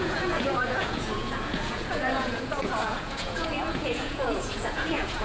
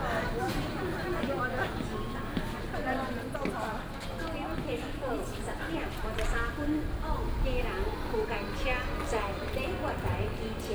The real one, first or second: second